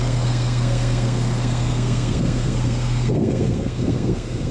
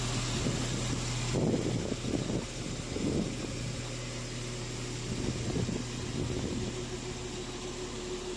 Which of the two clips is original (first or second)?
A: second